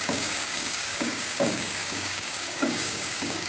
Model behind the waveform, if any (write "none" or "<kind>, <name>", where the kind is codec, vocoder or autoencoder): codec, DAC